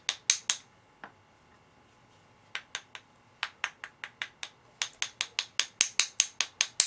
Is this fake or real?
real